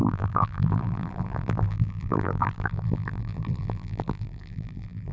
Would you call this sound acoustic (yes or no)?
no